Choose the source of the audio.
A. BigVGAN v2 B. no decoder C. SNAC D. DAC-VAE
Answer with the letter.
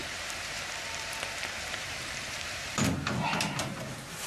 A